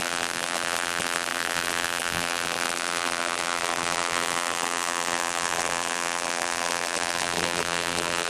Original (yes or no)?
no